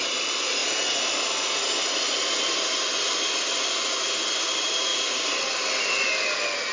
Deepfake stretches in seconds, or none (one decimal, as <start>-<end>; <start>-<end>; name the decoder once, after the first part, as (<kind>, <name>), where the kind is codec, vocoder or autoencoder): 4.9-5.4 (vocoder, Vocos)